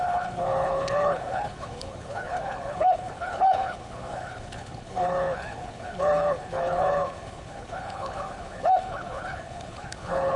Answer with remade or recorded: remade